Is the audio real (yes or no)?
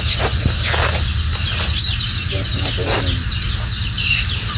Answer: yes